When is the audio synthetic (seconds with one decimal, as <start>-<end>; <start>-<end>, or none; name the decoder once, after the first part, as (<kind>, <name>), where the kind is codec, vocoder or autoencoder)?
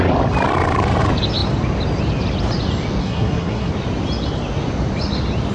3.0-3.7 (codec, SNAC)